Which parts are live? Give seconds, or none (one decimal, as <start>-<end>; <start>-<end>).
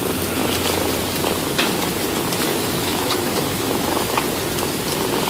0.0-2.5; 4.2-5.3